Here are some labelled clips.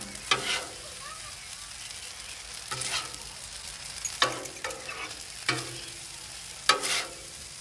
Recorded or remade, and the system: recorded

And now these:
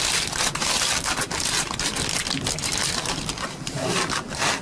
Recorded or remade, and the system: recorded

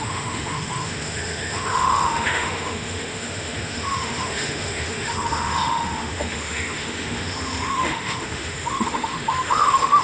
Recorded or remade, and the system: remade, autoencoder, DAC-VAE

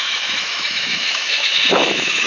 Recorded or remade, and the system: remade, autoencoder, DAC-VAE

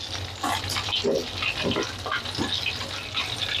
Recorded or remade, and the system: recorded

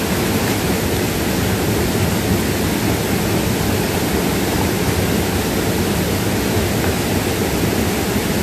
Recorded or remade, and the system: recorded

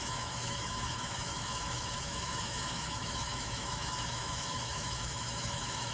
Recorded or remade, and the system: remade, autoencoder, DAC-VAE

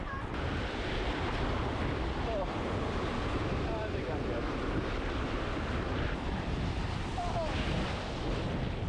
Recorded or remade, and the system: recorded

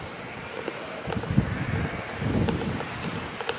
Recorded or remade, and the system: recorded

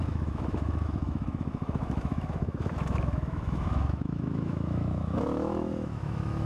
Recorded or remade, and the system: remade, autoencoder, DAC-VAE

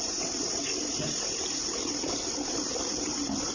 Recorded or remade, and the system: recorded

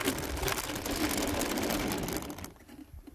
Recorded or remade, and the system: recorded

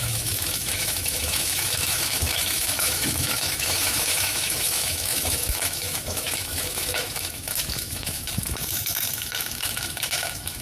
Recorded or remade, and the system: remade, autoencoder, DAC-VAE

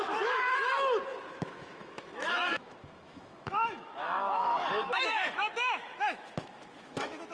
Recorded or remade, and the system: remade, autoencoder, DAC-VAE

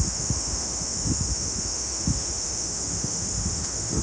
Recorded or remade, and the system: remade, autoencoder, DAC-VAE